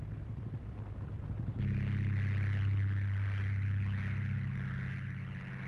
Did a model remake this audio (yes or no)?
no